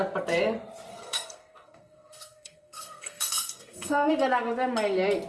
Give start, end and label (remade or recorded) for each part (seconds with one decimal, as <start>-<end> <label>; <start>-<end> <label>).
0.0-0.9 recorded; 0.9-4.1 remade; 4.1-5.3 recorded